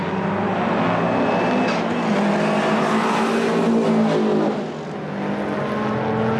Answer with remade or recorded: recorded